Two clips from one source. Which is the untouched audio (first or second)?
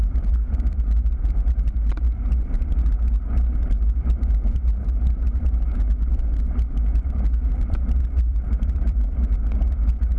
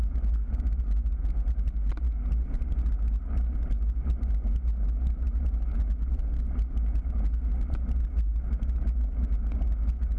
second